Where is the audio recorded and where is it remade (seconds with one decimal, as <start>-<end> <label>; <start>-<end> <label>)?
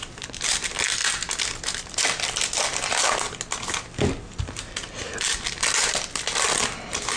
0.0-7.2 recorded